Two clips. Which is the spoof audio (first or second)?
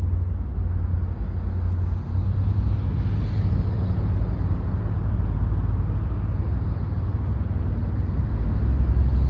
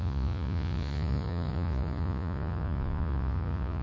second